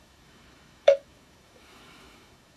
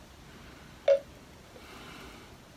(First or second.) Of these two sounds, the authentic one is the second